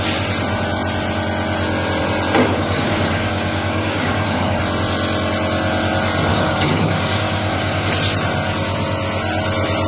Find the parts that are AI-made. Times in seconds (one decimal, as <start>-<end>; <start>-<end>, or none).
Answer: 2.4-4.6; 6.3-7.9